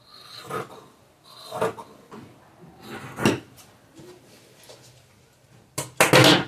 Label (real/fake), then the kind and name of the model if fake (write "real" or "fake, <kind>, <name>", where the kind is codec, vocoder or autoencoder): real